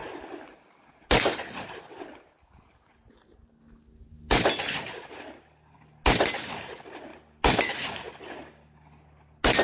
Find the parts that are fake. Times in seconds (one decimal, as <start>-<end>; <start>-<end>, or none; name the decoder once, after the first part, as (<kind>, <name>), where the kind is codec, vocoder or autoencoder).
none